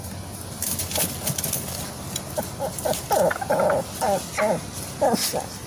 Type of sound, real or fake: real